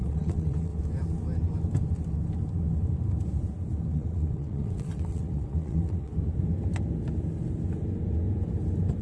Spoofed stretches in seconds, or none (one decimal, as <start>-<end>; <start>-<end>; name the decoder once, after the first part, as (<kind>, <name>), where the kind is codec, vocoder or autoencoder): 0.0-0.7 (vocoder, WaveNeXt); 3.9-6.1